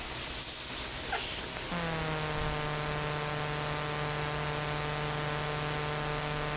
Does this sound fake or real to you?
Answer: real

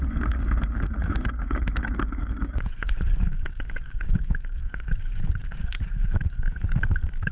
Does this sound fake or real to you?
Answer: fake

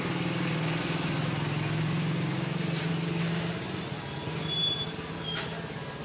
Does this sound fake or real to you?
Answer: real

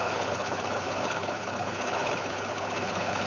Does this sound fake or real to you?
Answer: fake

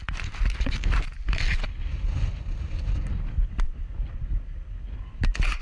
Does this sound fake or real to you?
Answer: real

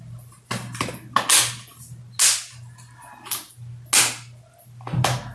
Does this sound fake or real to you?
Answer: real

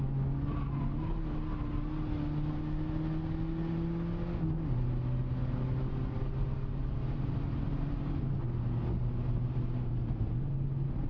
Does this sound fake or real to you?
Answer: real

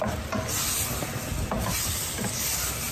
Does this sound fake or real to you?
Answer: real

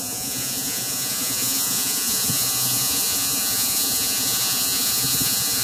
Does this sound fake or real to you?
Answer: fake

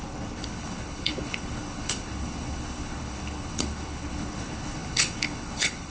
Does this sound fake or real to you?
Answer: fake